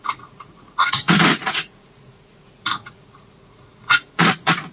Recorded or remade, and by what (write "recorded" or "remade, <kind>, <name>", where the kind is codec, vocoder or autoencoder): remade, vocoder, Vocos